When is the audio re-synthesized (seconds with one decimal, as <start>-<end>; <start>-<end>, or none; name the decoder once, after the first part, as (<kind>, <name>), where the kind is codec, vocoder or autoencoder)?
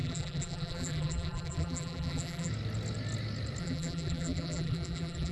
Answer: 0.0-2.5 (vocoder, BigVGAN v2); 3.6-5.3